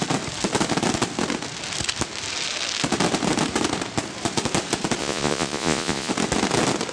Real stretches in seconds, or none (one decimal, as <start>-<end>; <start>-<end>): 0.0-5.0; 6.1-6.9